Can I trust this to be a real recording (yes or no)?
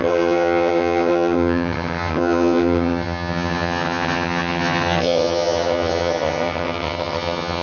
no